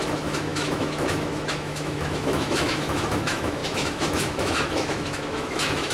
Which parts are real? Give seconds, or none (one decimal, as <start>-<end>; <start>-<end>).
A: none